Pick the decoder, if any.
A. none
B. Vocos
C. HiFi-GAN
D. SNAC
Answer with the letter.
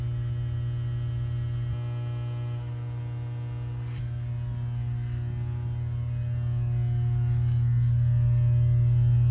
A